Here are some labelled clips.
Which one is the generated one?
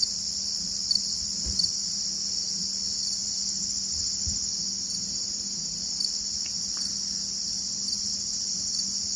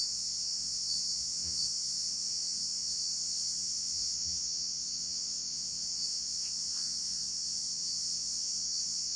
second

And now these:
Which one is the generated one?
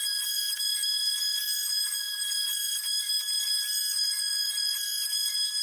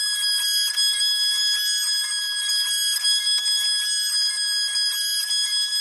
first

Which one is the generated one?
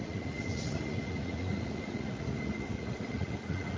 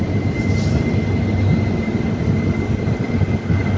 first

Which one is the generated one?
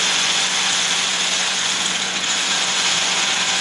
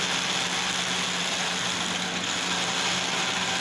first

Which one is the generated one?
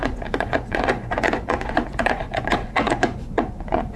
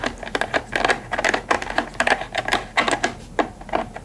first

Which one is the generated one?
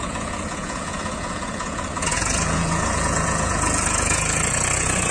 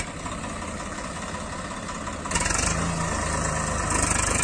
first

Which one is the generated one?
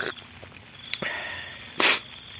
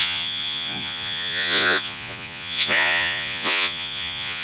second